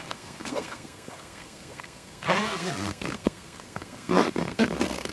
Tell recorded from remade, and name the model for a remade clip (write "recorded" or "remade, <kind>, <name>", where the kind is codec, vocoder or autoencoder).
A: remade, codec, SNAC